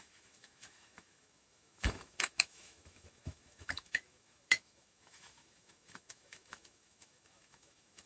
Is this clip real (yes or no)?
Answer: no